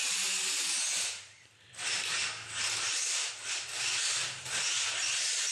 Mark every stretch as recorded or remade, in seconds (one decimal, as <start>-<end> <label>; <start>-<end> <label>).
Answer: 0.0-5.5 recorded